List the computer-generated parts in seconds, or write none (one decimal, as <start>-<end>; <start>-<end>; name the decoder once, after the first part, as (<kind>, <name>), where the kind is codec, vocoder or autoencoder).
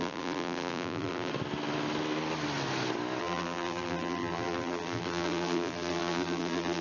0.0-1.3 (vocoder, BigVGAN v2); 3.2-6.8